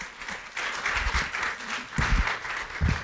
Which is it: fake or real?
real